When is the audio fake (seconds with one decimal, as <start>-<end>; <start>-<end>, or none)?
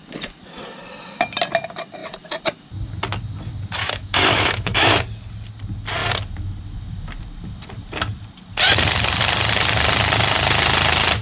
3.8-4.9